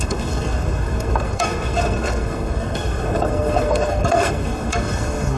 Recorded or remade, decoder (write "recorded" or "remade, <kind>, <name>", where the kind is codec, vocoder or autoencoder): remade, codec, SNAC